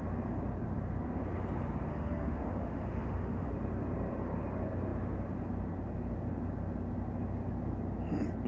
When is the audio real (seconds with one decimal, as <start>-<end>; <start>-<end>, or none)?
0.0-1.9; 3.5-8.5